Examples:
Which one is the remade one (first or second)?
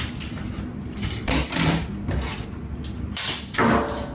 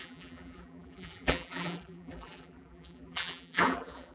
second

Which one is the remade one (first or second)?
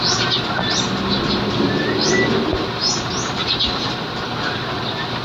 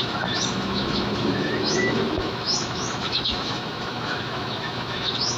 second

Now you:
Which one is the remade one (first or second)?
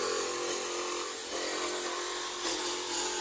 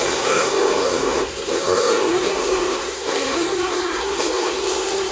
second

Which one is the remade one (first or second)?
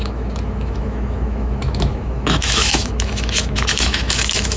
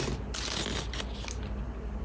first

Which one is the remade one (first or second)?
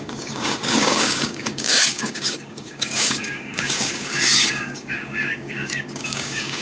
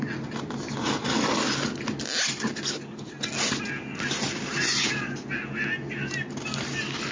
first